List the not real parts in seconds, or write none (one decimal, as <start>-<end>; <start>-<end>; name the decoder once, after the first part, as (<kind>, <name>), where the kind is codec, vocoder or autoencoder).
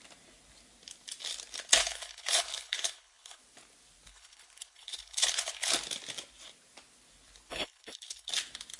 1.8-3.4 (codec, HILCodec); 4.1-5.7; 7.5-8.3